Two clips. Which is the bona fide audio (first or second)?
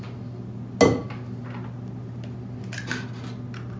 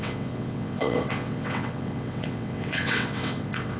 first